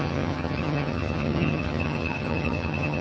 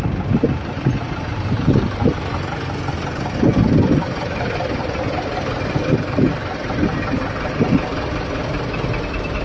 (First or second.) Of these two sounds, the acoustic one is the second